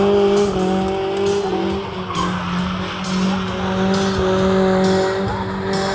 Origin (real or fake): real